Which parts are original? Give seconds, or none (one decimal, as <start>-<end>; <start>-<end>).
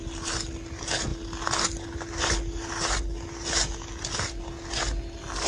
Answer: 0.0-5.5